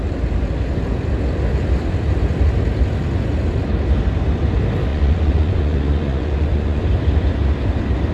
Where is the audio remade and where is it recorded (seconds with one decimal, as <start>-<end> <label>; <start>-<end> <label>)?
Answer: 0.0-4.9 recorded; 4.9-6.8 remade; 6.8-8.1 recorded